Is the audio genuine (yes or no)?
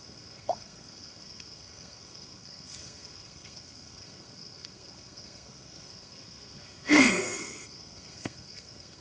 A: no